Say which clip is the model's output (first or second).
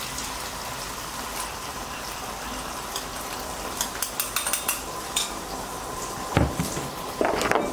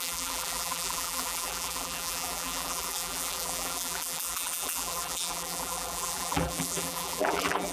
second